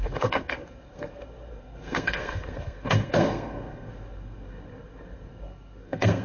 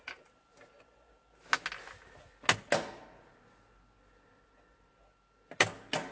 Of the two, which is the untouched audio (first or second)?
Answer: second